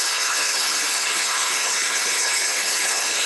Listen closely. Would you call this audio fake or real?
fake